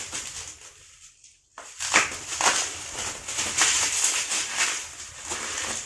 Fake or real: fake